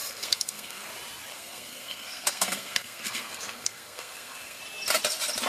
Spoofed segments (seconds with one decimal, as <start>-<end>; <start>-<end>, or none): 0.0-0.9; 1.3-4.6